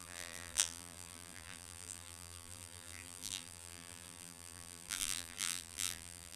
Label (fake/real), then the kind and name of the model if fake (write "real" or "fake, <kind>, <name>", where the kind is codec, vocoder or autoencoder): fake, vocoder, BigVGAN v2